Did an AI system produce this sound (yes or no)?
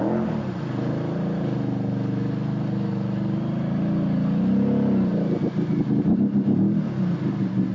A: no